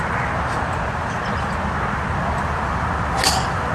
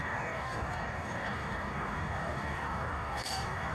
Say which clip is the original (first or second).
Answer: first